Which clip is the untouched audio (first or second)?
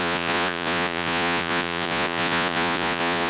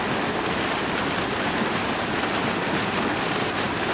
second